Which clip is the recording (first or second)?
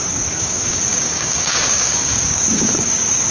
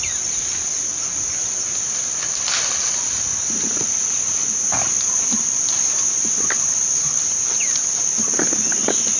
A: second